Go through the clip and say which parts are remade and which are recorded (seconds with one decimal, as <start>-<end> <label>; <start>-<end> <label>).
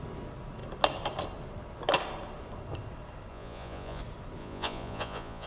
0.0-3.3 recorded; 3.3-4.0 remade; 4.0-4.4 recorded; 4.4-5.5 remade